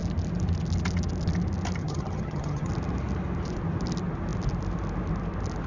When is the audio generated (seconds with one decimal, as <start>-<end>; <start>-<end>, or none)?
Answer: 1.8-2.7